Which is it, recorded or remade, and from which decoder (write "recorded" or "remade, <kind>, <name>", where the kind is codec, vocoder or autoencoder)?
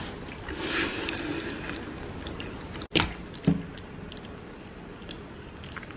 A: recorded